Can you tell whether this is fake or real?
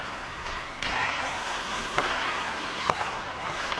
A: fake